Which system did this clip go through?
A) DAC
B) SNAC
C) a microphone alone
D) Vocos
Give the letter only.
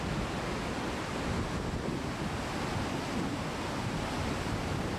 C